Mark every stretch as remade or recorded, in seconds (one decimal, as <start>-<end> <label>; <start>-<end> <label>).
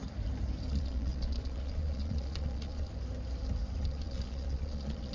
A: 0.0-0.7 recorded; 0.7-2.9 remade; 2.9-3.8 recorded; 3.8-5.1 remade